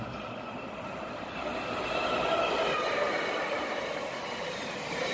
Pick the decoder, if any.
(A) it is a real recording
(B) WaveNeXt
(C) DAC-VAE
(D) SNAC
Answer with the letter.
A